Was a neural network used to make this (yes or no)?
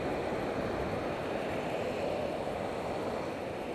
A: no